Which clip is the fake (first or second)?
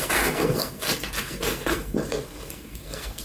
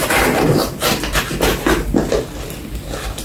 first